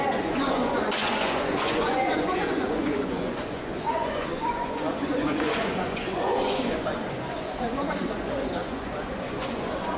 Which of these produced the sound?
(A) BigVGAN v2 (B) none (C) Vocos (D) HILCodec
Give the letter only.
C